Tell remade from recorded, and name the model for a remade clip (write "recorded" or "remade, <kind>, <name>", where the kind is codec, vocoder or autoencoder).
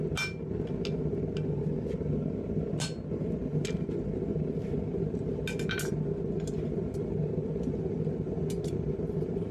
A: recorded